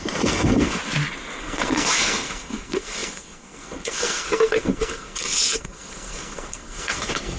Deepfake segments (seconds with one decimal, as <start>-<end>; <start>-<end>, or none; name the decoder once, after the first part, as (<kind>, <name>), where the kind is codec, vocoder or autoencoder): 0.0-0.8 (codec, SNAC); 1.4-7.4